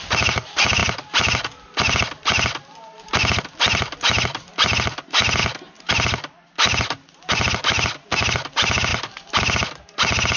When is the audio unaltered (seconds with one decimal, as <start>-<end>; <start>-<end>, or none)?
0.0-10.4